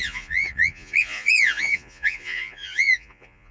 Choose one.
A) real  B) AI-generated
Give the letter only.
B